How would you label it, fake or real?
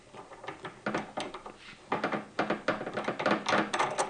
real